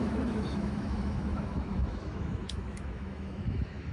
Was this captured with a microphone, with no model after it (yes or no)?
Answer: no